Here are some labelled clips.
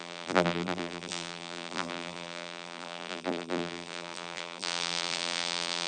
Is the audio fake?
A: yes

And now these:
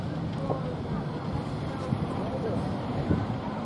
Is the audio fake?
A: yes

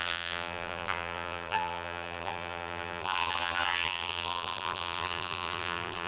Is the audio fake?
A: yes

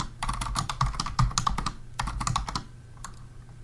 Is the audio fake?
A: no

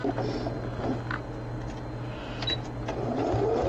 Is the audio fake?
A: no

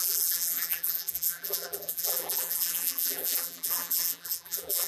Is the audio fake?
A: yes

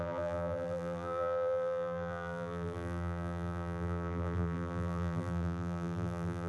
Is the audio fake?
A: yes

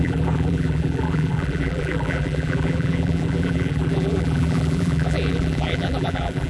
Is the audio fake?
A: yes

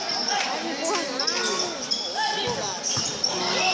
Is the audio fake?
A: no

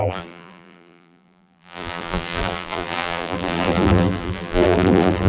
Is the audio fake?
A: yes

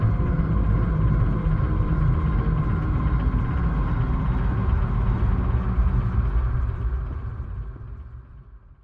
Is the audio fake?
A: no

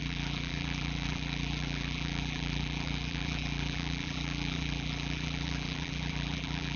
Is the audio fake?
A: yes